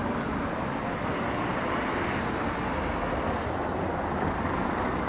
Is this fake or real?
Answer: real